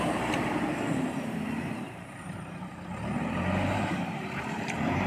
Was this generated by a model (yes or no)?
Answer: yes